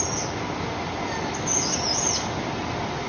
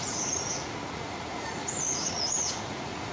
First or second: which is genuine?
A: first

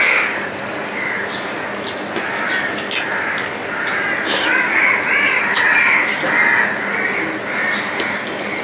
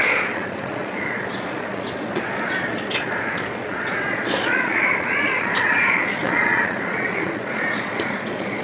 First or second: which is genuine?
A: first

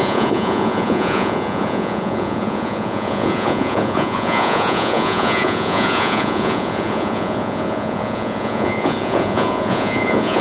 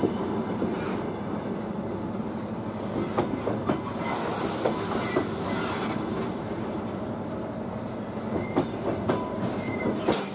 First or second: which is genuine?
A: second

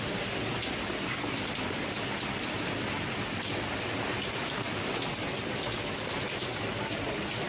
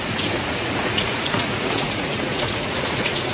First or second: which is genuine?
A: first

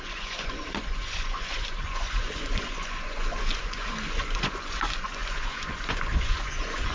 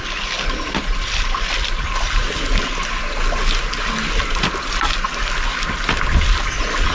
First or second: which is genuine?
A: second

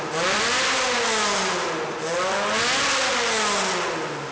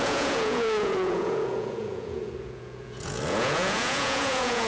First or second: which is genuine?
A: first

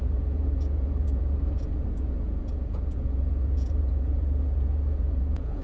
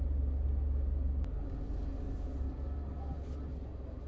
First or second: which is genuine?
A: second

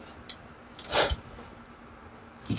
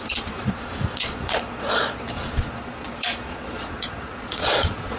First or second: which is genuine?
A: first